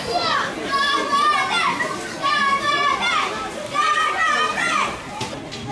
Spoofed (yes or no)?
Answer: no